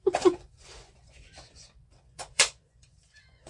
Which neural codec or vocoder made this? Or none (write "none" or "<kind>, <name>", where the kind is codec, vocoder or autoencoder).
vocoder, Vocos